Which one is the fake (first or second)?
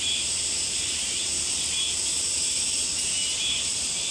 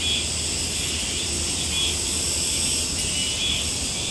first